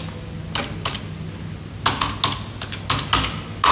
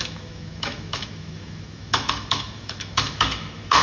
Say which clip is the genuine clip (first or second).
first